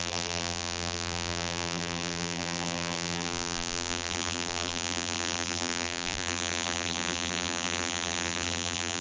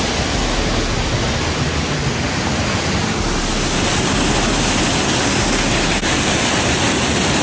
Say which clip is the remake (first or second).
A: first